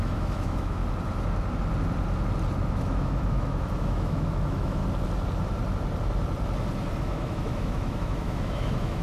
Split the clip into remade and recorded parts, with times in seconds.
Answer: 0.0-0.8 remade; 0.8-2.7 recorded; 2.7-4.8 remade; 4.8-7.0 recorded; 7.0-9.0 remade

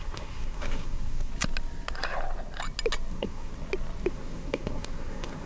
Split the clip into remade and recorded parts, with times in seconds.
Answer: 0.0-1.3 remade; 1.3-3.1 recorded; 3.1-3.5 remade; 3.5-4.1 recorded; 4.1-5.5 remade

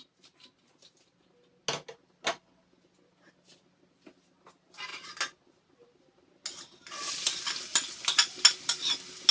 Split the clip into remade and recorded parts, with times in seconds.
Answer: 0.0-9.3 recorded

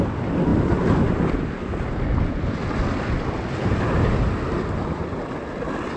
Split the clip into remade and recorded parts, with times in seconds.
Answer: 0.0-6.0 recorded

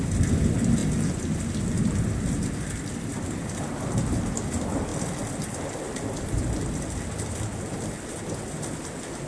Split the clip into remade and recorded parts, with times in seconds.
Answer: 0.0-9.3 recorded

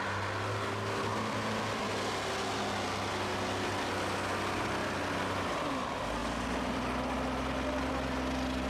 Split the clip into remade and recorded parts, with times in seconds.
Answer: 0.0-1.1 recorded; 1.1-1.9 remade; 1.9-8.7 recorded